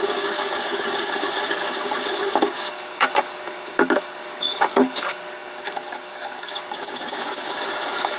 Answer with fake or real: fake